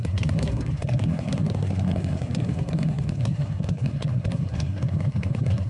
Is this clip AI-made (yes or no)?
yes